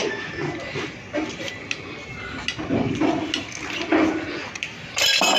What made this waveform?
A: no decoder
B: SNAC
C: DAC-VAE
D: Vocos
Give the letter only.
A